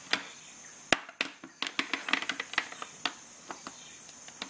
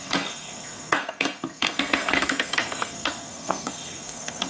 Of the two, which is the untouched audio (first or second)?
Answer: first